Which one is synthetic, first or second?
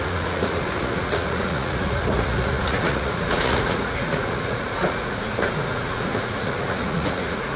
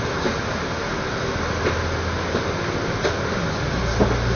first